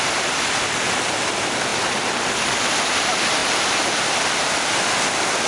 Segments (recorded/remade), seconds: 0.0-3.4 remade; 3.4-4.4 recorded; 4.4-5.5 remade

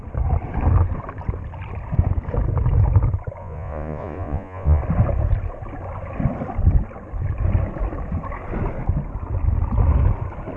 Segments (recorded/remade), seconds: 0.0-3.4 recorded; 3.4-4.8 remade; 4.8-10.6 recorded

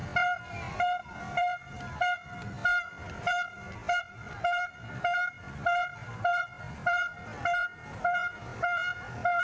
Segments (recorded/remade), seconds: 0.0-9.4 recorded

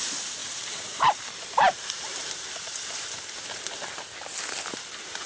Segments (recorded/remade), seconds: 0.0-0.4 recorded; 0.4-3.6 remade; 3.6-5.3 recorded

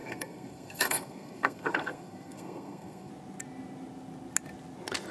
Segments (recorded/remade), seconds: 0.0-3.1 remade; 3.1-5.1 recorded

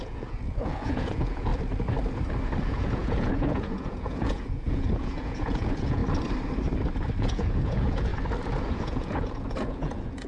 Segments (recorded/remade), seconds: 0.0-1.5 remade; 1.5-2.6 recorded; 2.6-6.0 remade; 6.0-7.2 recorded; 7.2-8.1 remade; 8.1-8.6 recorded; 8.6-10.3 remade